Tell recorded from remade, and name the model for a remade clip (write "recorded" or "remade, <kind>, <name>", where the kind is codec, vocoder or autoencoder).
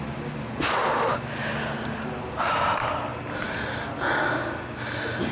recorded